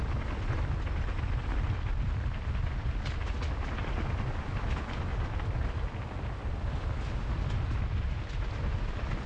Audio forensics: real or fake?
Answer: real